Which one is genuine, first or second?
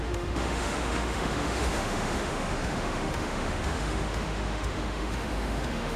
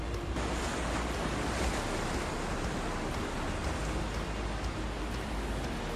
second